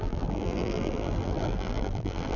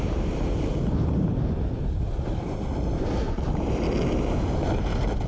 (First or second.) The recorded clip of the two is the second